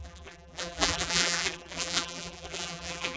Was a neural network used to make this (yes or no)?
yes